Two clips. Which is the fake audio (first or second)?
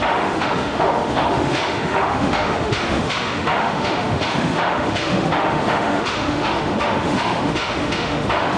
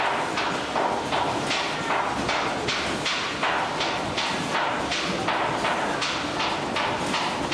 first